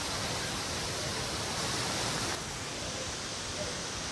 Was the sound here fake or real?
real